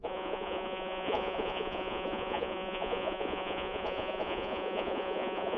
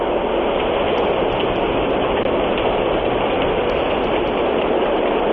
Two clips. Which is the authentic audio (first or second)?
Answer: second